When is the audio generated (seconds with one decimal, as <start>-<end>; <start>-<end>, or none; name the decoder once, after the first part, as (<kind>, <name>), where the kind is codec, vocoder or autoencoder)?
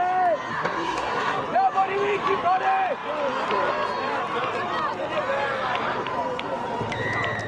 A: 0.5-1.4 (codec, SNAC)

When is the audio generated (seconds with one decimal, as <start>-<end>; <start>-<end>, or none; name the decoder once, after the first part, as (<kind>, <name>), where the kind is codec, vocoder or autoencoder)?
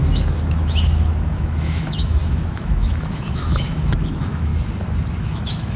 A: 0.0-4.5 (autoencoder, DAC-VAE); 5.2-5.8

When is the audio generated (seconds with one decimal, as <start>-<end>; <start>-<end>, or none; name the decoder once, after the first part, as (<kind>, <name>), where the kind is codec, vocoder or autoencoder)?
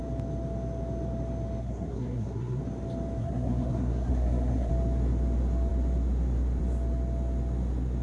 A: 1.6-2.6 (codec, SNAC); 3.2-4.7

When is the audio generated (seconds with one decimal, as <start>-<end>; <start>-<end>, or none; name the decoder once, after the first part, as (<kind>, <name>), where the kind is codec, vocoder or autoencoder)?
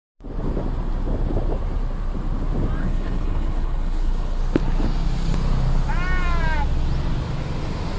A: 2.8-4.4 (codec, HILCodec)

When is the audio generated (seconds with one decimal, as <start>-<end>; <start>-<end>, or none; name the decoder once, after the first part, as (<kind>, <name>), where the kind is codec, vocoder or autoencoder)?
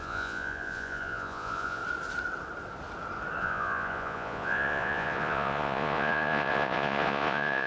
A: 0.0-1.8 (vocoder, Vocos); 3.4-7.7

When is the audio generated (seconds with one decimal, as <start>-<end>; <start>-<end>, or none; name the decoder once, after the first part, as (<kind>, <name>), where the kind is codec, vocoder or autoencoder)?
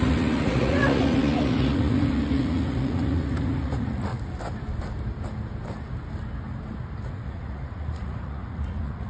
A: 0.0-4.1 (vocoder, Vocos); 7.1-9.1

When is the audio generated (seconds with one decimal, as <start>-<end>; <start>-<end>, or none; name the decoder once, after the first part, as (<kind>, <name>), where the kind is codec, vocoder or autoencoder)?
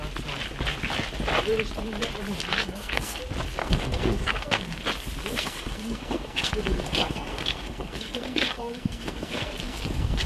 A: 2.5-3.2 (codec, SNAC); 3.6-4.8; 5.2-10.3